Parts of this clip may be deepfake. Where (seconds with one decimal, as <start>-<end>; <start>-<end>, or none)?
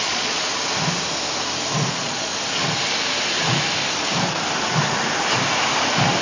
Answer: 0.0-0.5; 1.9-2.3